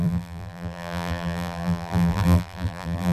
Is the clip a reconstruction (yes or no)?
yes